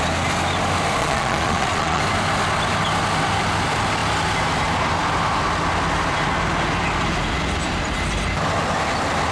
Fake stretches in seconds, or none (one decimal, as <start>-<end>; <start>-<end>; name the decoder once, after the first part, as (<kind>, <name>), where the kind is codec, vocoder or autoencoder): 1.0-2.0 (vocoder, Vocos)